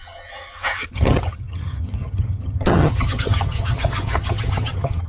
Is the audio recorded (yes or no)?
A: no